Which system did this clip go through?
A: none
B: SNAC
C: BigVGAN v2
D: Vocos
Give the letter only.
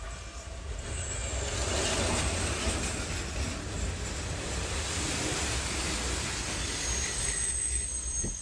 A